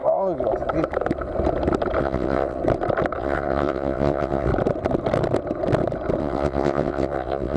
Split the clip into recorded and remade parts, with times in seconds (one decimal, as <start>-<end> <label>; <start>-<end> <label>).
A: 0.0-2.0 recorded; 2.0-2.6 remade; 2.6-3.2 recorded; 3.2-4.5 remade; 4.5-6.2 recorded; 6.2-7.6 remade